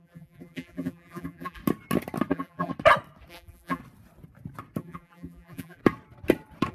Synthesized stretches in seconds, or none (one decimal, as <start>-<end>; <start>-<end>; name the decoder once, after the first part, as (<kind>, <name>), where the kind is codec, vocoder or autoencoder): 0.0-1.6 (vocoder, BigVGAN v2); 2.3-2.7; 3.3-3.8; 4.8-5.8